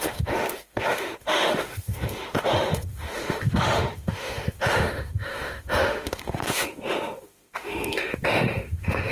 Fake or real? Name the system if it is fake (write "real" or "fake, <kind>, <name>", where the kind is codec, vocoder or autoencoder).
fake, autoencoder, DAC-VAE